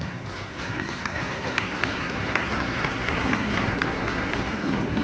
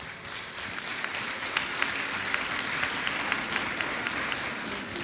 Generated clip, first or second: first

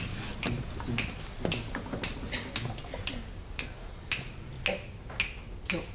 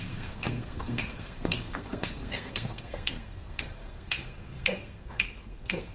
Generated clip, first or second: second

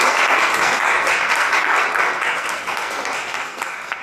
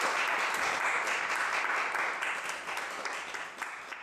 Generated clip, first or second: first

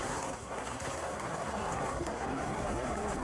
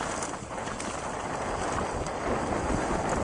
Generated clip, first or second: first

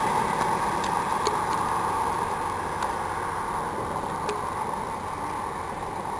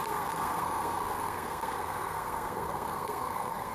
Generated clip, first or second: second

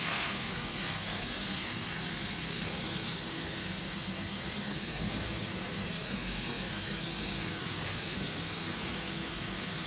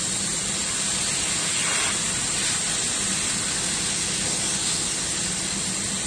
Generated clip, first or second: first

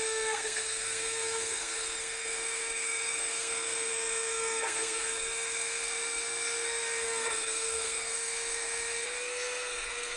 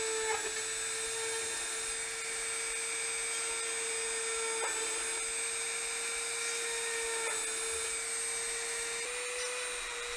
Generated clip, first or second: first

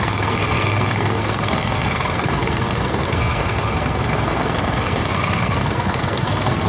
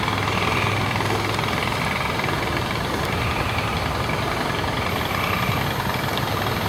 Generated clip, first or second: first